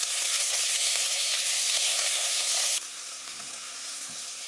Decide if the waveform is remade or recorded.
remade